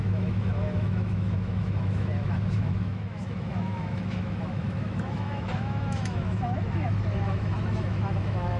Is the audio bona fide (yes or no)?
no